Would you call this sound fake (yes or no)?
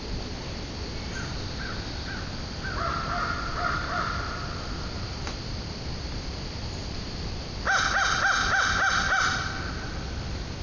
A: no